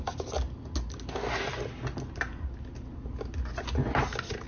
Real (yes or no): yes